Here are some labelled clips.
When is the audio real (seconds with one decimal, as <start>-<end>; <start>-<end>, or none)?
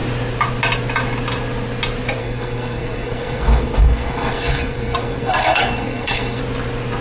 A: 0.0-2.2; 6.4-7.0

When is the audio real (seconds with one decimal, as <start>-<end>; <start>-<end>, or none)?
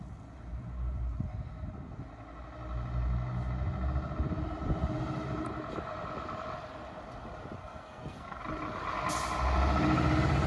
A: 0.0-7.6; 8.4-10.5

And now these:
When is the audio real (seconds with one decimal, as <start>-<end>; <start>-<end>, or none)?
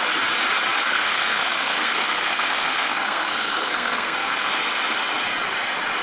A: 0.0-0.9; 4.5-6.0